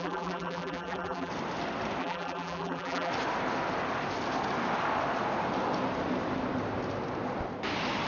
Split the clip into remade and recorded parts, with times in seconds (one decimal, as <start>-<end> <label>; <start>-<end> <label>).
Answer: 0.0-1.3 remade; 1.3-2.0 recorded; 2.0-3.1 remade; 3.1-8.1 recorded